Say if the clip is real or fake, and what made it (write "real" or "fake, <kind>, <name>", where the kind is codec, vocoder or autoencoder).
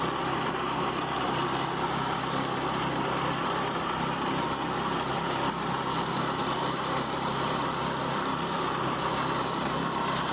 real